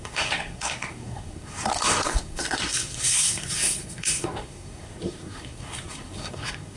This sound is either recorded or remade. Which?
remade